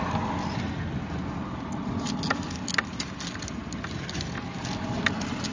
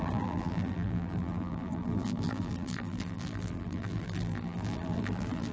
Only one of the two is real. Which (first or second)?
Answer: first